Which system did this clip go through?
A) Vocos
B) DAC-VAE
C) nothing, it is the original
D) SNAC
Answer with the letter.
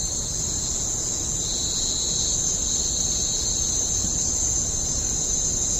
C